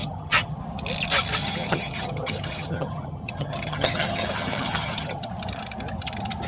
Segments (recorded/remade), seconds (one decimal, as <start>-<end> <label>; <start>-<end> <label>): 0.0-0.6 remade; 0.6-1.4 recorded; 1.4-5.3 remade; 5.3-6.5 recorded